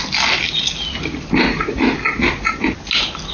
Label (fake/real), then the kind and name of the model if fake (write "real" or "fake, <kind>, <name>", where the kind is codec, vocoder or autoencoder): real